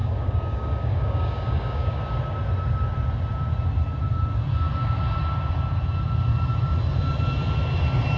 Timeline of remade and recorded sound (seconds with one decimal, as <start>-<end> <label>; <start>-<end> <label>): 0.0-2.0 remade; 2.0-8.2 recorded